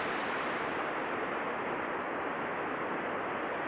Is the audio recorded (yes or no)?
yes